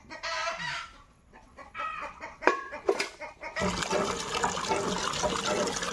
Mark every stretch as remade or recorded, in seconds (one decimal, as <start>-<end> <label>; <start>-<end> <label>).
0.0-1.1 recorded; 1.1-2.9 remade; 2.9-5.9 recorded